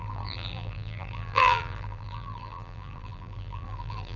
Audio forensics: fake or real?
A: fake